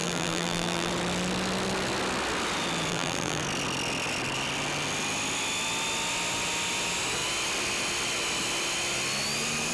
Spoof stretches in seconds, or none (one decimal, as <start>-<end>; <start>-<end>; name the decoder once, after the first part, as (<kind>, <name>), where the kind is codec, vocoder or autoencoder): 0.0-0.9 (vocoder, BigVGAN v2); 2.9-3.4